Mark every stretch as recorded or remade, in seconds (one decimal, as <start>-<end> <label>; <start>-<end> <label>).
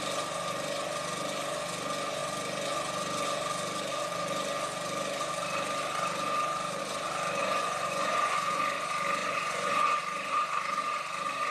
0.0-7.4 recorded; 7.4-8.6 remade; 8.6-9.2 recorded; 9.2-10.0 remade; 10.0-11.5 recorded